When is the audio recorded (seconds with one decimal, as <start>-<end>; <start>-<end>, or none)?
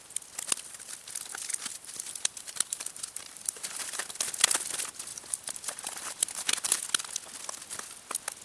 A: 0.0-1.5; 4.1-5.1; 6.8-8.4